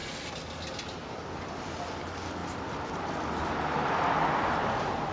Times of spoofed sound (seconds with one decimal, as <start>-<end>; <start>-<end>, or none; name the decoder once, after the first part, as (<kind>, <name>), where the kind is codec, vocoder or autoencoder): none